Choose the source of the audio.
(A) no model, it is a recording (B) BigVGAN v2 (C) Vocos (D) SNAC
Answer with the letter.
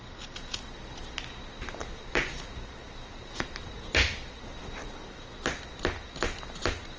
A